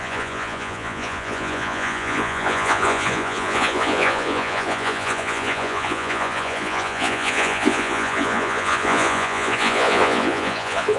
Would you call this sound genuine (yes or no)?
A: no